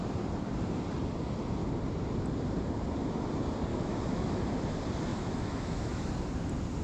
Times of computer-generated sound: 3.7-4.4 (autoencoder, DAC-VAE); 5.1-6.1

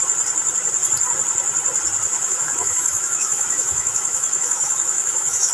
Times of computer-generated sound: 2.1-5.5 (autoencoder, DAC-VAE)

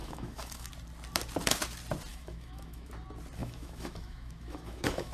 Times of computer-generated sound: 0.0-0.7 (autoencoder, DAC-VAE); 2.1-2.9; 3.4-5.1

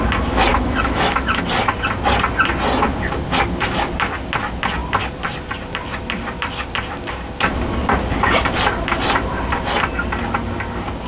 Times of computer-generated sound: 0.5-1.4 (autoencoder, DAC-VAE)

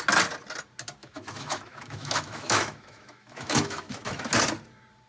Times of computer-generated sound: 1.0-4.1 (autoencoder, DAC-VAE)

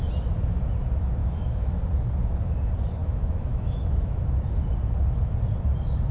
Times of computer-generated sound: 1.2-1.8 (autoencoder, DAC-VAE); 3.0-4.2